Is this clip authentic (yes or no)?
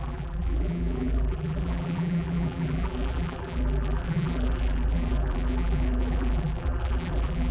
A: no